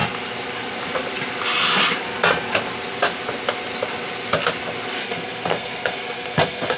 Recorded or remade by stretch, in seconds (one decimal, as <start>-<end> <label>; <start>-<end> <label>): 0.0-5.0 recorded; 5.0-6.8 remade